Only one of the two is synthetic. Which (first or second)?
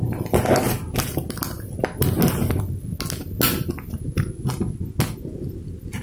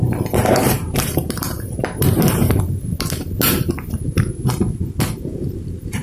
second